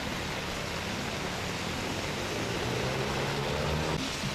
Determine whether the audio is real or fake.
real